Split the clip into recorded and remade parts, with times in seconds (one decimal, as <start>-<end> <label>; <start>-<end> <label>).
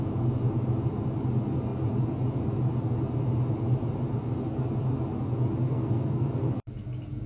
0.0-5.7 recorded; 5.7-6.4 remade; 6.4-7.3 recorded